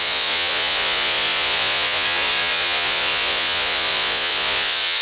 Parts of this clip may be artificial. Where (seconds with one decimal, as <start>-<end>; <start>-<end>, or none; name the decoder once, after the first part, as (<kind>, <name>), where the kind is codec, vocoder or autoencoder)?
0.0-5.0 (vocoder, Vocos)